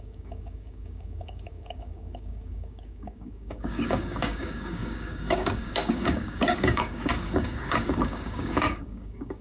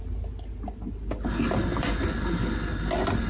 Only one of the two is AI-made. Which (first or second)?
first